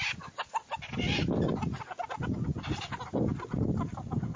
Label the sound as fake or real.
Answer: real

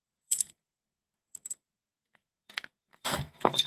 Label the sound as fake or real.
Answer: fake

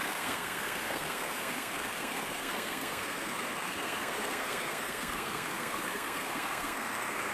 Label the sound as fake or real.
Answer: fake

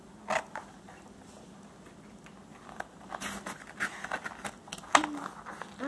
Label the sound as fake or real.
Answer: real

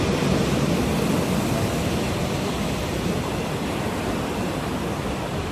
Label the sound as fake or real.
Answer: real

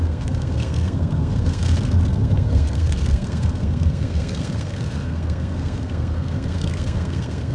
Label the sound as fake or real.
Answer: fake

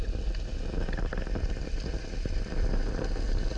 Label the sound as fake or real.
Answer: real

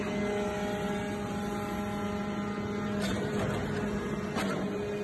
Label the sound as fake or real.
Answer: real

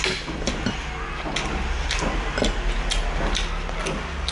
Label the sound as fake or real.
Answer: real